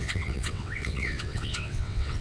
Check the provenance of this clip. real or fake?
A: fake